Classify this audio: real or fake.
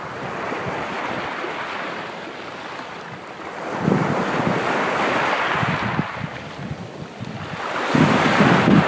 real